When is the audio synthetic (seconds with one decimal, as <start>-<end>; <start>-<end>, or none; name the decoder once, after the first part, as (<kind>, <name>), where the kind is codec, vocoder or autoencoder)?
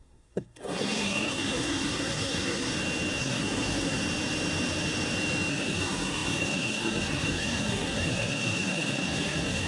0.0-2.7 (codec, SNAC); 3.2-4.0; 5.5-9.7